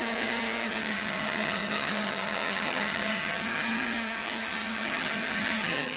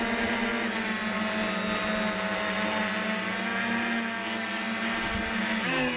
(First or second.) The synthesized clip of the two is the first